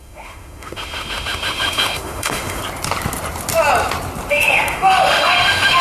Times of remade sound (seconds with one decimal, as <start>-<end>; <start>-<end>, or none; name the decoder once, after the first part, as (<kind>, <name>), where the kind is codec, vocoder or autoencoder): 0.0-2.6 (autoencoder, DAC-VAE); 4.3-5.8